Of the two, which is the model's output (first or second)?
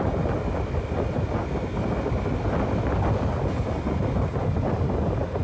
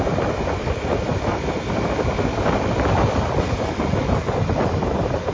second